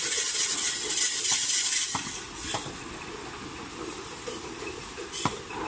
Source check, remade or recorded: recorded